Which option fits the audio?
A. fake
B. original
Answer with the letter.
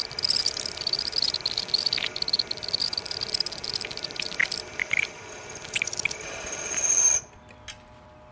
B